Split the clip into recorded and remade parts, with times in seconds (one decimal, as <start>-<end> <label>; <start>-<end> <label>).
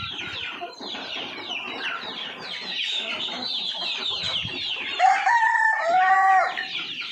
0.0-7.1 remade